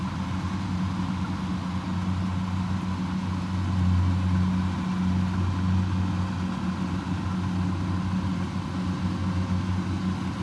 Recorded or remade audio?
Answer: recorded